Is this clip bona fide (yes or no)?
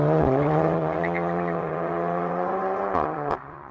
no